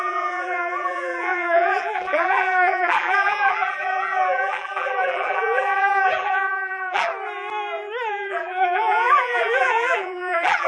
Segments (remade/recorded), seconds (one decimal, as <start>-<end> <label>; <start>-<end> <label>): 0.0-7.1 remade; 7.1-8.1 recorded; 8.1-10.7 remade